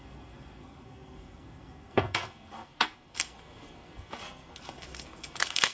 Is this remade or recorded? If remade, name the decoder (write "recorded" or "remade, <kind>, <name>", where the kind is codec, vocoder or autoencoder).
remade, codec, SNAC